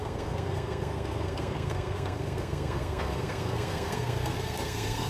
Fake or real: fake